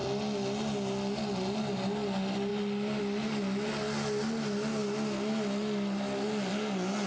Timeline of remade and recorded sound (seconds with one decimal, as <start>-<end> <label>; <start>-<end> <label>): 0.0-7.1 recorded